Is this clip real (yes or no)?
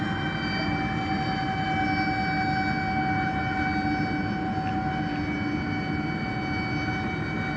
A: yes